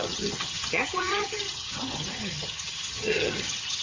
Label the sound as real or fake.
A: fake